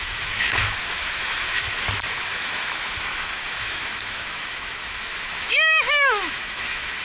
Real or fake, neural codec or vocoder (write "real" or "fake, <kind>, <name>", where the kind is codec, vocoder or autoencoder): fake, autoencoder, DAC-VAE